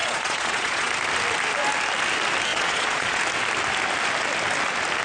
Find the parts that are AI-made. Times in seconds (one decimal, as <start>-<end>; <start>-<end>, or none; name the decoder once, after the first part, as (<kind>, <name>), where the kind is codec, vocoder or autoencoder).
0.0-0.9 (vocoder, Vocos); 2.5-3.2